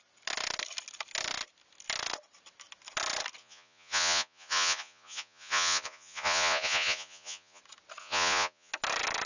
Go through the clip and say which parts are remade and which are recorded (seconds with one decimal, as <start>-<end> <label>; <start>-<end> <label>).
0.0-3.4 recorded; 3.4-7.6 remade; 7.6-8.0 recorded; 8.0-8.7 remade; 8.7-9.3 recorded